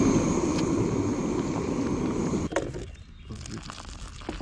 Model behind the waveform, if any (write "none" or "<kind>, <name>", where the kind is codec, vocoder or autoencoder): none